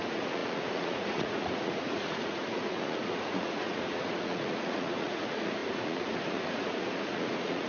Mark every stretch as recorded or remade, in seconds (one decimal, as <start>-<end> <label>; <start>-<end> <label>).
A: 0.0-7.7 remade

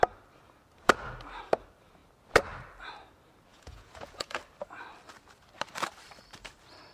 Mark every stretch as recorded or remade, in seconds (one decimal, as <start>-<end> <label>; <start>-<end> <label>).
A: 0.0-3.5 recorded; 3.5-4.4 remade; 4.4-6.9 recorded